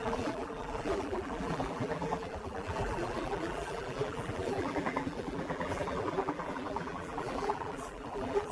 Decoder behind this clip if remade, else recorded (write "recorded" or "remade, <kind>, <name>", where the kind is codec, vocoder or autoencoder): remade, vocoder, BigVGAN v2